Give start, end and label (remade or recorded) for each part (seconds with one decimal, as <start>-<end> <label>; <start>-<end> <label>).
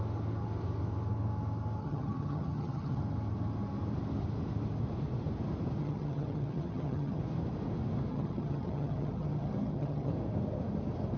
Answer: 0.0-1.8 recorded; 1.8-3.0 remade; 3.0-5.8 recorded; 5.8-7.2 remade; 7.2-8.1 recorded; 8.1-10.1 remade; 10.1-11.2 recorded